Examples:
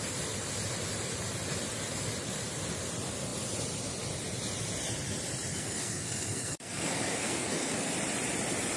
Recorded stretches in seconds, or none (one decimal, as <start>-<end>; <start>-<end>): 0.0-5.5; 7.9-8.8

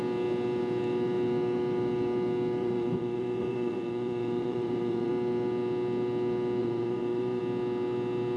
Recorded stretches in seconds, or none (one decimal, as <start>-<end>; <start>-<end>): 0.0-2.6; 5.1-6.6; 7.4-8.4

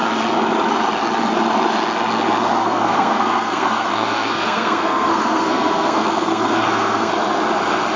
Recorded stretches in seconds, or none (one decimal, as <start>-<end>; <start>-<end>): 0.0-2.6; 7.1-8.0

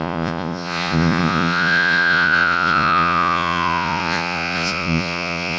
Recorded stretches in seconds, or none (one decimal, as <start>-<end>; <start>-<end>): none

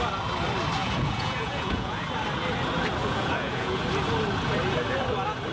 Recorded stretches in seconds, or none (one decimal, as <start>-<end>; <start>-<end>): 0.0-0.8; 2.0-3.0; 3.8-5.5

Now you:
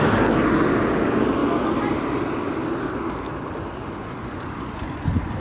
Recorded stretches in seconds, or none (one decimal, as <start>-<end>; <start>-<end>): 0.0-3.8

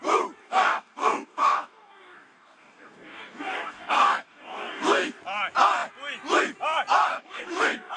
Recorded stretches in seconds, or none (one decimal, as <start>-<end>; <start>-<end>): 0.0-0.4; 5.2-7.1